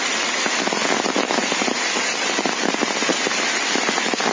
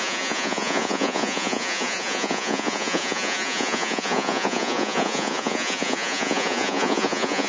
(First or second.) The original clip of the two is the first